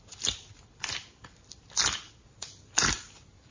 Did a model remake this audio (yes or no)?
no